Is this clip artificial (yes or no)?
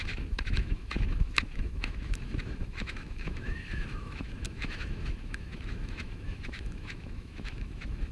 yes